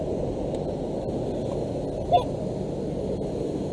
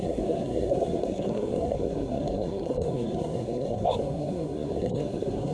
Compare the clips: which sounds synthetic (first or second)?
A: second